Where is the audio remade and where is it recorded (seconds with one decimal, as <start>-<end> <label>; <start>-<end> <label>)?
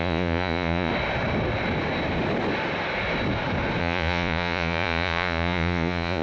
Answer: 0.0-0.9 remade; 0.9-3.8 recorded; 3.8-6.2 remade